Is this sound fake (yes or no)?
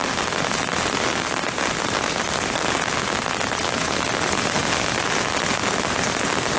no